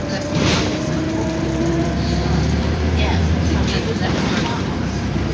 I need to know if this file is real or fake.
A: fake